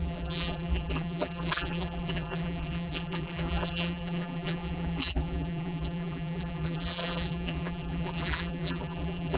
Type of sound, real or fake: fake